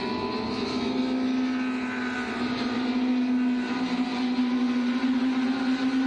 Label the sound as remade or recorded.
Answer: recorded